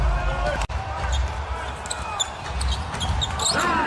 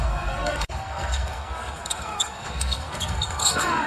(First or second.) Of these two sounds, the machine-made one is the second